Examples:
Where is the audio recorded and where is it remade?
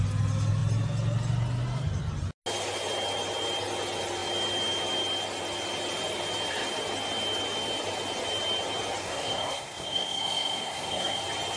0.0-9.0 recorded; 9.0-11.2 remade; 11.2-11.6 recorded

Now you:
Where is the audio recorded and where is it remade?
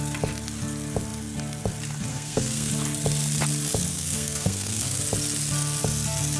0.0-2.1 recorded; 2.1-2.7 remade; 2.7-3.9 recorded; 3.9-5.0 remade; 5.0-6.4 recorded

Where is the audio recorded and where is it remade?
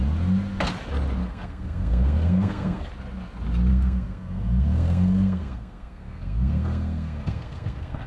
0.0-1.2 recorded; 1.2-2.9 remade; 2.9-3.7 recorded; 3.7-8.1 remade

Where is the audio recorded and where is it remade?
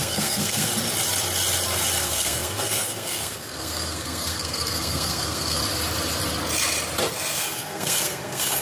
0.0-0.7 remade; 0.7-2.0 recorded; 2.0-5.6 remade; 5.6-7.1 recorded; 7.1-8.6 remade